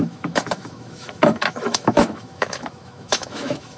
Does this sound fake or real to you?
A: fake